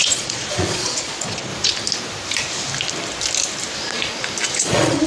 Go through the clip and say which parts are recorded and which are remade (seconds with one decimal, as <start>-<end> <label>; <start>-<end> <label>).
0.0-1.5 remade; 1.5-4.6 recorded; 4.6-5.1 remade